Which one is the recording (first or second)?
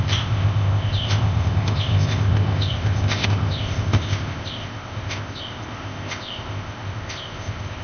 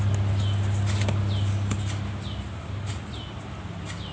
second